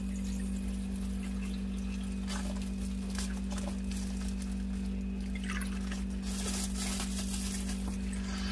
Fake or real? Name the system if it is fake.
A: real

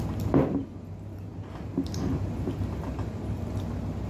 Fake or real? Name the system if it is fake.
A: real